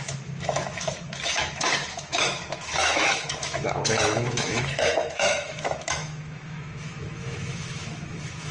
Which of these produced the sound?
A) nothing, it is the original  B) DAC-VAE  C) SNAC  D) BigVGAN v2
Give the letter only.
B